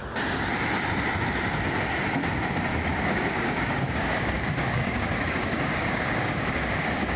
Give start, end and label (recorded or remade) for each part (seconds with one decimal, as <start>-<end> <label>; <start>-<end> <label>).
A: 0.0-2.7 recorded; 2.7-7.2 remade